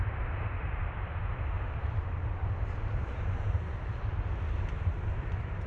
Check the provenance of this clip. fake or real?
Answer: fake